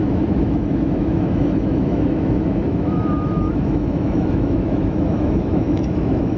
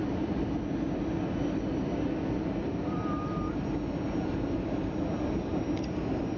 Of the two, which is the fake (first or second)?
first